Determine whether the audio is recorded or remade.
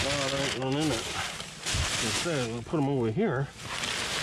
recorded